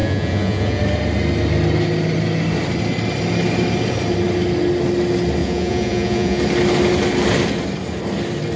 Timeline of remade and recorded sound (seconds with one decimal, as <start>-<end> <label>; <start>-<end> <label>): 0.0-0.8 remade; 0.8-5.4 recorded; 5.4-6.4 remade; 6.4-8.6 recorded